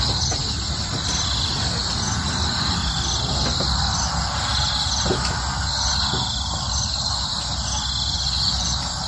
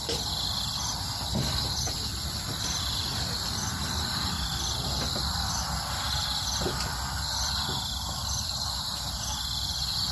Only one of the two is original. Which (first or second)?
first